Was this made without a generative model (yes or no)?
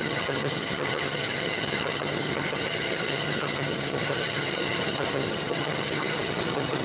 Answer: no